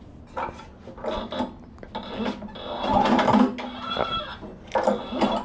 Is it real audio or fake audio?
real